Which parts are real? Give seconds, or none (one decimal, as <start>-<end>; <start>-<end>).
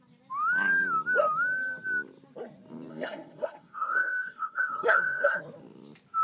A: 0.0-2.9; 5.4-6.2